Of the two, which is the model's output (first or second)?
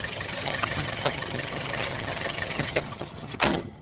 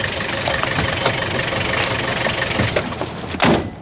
first